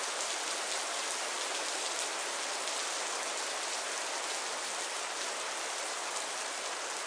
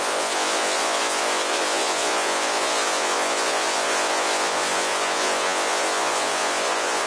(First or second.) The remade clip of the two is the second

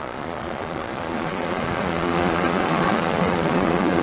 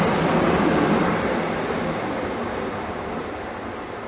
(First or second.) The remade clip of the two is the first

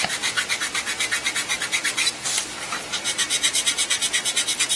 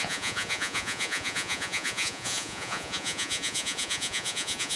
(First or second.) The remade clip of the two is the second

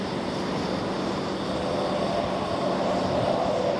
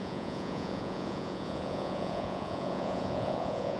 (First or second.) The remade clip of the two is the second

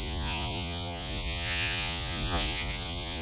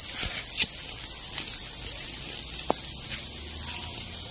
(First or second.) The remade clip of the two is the first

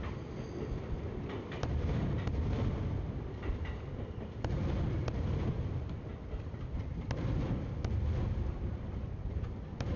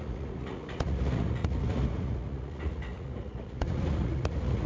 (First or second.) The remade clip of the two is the second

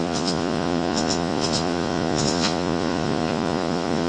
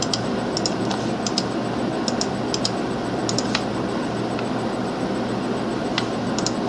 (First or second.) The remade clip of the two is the first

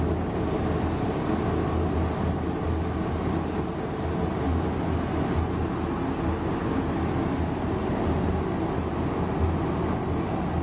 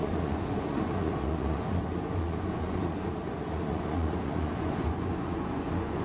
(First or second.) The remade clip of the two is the second